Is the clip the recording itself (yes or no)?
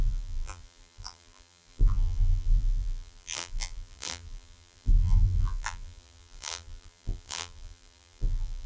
no